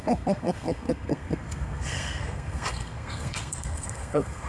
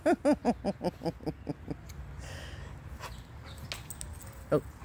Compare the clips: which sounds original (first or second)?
second